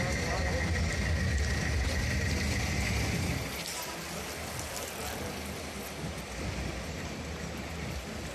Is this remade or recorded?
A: recorded